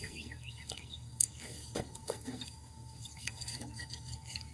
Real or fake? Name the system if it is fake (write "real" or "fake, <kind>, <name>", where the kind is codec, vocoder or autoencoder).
fake, codec, SNAC